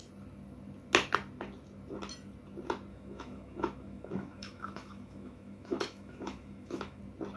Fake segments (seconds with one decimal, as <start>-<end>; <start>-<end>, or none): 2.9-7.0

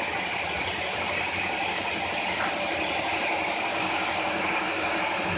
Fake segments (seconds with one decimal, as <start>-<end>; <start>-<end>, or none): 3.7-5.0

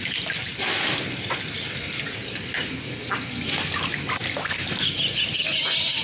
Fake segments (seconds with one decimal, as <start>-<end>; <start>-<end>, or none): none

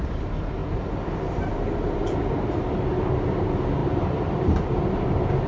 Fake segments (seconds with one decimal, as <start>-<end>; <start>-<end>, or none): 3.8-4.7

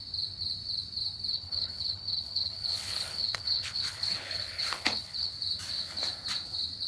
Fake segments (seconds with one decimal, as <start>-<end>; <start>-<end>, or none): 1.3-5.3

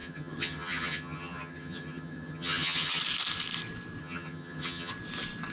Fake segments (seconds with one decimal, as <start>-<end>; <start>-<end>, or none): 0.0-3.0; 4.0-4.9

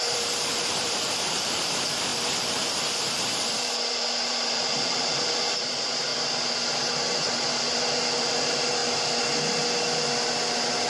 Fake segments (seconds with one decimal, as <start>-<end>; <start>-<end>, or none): 0.0-2.1; 3.0-6.1; 8.2-8.8